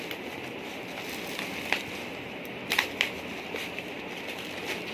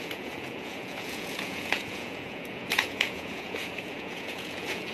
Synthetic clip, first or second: second